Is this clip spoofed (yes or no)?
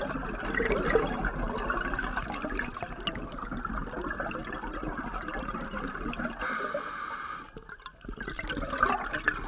no